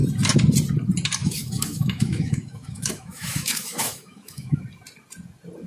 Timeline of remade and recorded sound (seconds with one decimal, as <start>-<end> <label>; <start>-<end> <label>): 0.0-1.2 recorded; 1.2-4.6 remade; 4.6-5.7 recorded